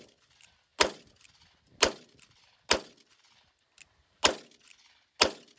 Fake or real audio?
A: real